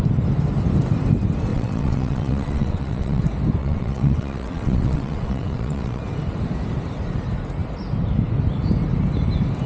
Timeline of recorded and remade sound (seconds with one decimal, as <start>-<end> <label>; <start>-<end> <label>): 0.0-1.5 recorded; 1.5-3.2 remade; 3.2-3.6 recorded; 3.6-6.0 remade; 6.0-9.7 recorded